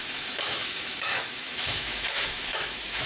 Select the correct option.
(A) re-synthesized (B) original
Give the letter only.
A